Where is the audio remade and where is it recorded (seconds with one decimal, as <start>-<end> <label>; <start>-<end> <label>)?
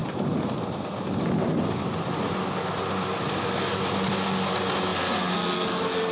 0.0-6.1 recorded